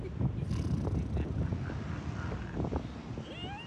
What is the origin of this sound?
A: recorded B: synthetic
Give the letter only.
A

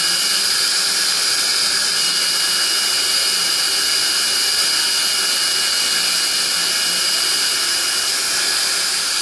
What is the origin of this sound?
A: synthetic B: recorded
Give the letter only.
B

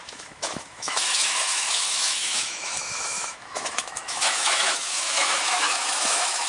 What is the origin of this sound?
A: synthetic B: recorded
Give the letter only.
A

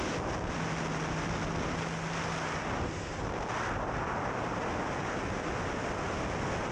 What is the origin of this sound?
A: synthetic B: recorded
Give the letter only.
B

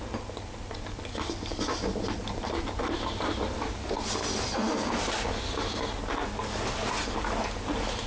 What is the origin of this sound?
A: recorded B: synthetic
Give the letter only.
A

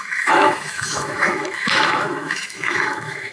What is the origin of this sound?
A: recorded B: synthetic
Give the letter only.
B